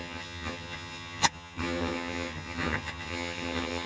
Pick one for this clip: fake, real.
fake